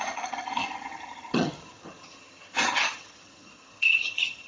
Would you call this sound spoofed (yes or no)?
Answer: yes